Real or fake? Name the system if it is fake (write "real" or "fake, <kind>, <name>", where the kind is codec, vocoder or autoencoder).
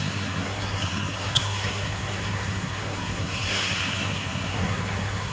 fake, codec, SNAC